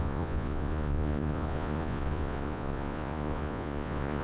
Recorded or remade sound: remade